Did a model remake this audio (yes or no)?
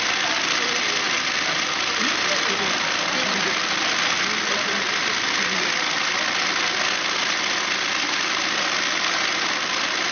no